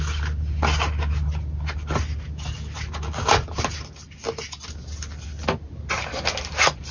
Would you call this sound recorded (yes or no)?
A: yes